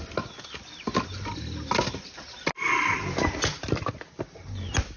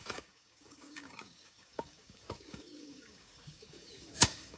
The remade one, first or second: second